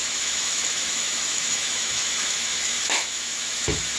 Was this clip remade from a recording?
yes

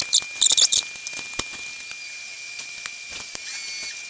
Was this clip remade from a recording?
no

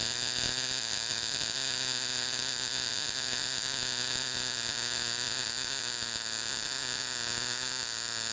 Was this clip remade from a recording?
yes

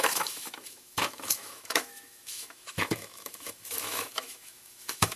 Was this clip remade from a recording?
yes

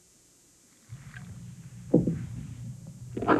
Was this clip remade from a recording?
no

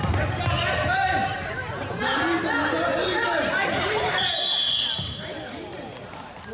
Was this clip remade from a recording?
no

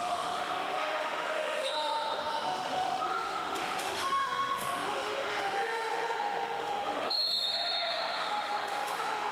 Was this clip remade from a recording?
yes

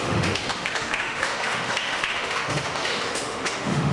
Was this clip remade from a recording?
yes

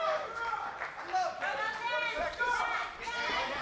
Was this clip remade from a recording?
no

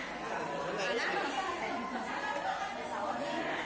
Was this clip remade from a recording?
no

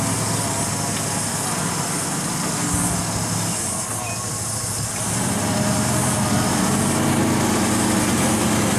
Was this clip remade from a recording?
no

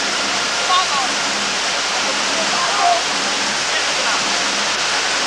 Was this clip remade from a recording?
no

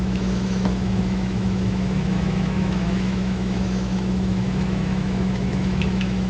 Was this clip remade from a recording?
yes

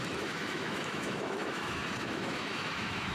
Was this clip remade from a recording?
yes